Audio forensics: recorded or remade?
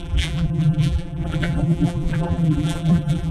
remade